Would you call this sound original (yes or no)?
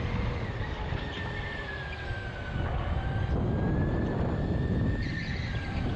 yes